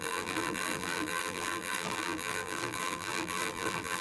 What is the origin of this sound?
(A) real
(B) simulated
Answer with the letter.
B